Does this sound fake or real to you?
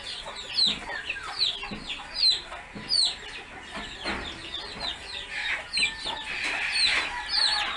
real